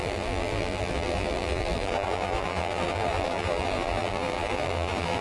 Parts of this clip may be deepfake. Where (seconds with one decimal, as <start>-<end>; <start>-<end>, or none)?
0.0-5.2